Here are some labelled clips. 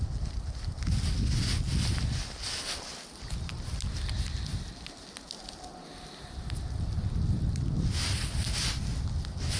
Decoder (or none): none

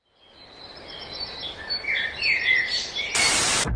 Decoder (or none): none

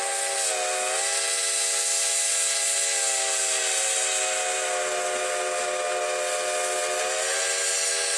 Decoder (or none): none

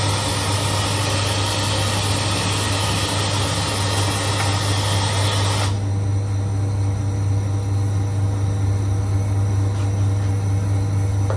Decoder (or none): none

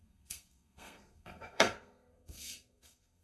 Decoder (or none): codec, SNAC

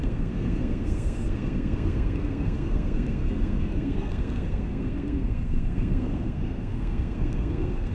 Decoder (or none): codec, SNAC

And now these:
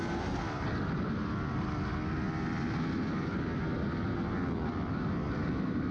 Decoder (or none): none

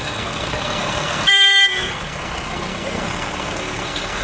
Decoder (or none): codec, SNAC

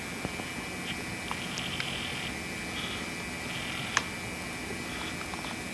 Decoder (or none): none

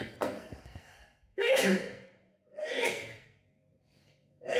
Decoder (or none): codec, SNAC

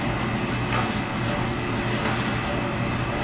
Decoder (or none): none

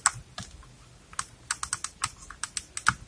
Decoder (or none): none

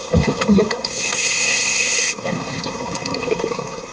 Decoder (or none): codec, SNAC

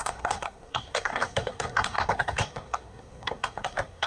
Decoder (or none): codec, SNAC